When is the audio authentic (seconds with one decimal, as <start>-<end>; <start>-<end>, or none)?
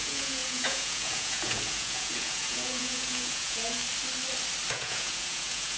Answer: 3.8-4.7